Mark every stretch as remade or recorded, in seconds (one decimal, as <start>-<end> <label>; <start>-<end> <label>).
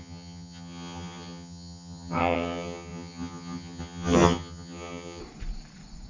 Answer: 0.0-5.2 remade; 5.2-6.1 recorded